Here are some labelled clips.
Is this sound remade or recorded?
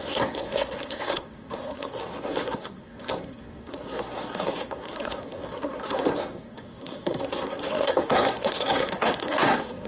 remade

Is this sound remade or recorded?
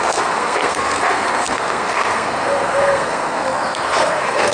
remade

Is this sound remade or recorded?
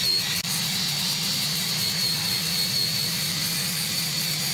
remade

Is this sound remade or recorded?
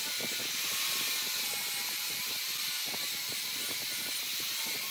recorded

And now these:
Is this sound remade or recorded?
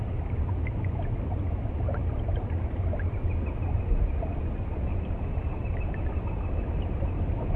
recorded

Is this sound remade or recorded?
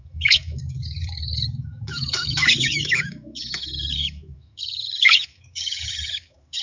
remade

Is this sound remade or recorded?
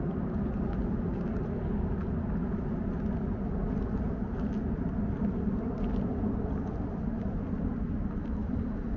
recorded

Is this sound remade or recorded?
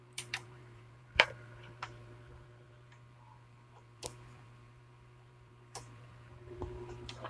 remade